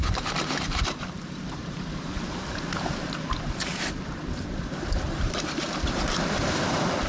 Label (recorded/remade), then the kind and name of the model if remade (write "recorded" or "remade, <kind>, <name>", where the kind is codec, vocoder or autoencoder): remade, vocoder, BigVGAN v2